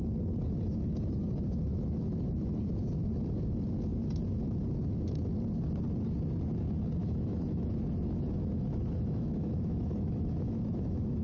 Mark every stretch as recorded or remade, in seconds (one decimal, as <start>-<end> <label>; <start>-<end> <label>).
0.0-1.7 recorded; 1.7-2.6 remade; 2.6-7.0 recorded; 7.0-11.2 remade